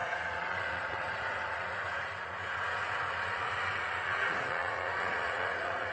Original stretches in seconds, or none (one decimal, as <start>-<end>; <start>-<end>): none